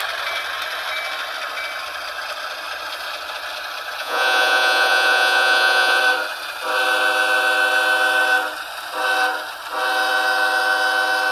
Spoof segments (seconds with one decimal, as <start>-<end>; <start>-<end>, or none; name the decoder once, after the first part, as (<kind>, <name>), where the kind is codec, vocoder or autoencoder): 4.0-6.0 (vocoder, Vocos)